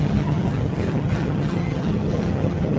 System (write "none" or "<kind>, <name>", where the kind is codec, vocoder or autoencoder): vocoder, HiFi-GAN